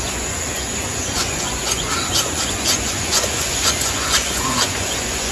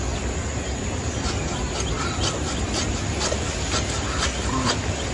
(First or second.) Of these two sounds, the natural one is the second